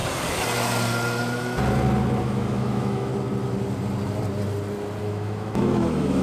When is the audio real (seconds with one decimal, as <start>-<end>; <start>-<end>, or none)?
0.0-2.2; 3.1-5.0